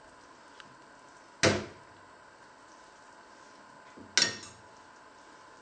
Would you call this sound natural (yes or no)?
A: yes